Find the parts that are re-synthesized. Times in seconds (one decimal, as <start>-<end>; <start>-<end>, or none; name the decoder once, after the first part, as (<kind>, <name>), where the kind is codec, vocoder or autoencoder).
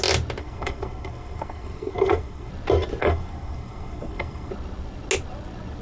0.4-2.5 (codec, SNAC); 3.0-4.5